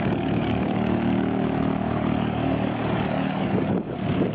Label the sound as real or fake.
fake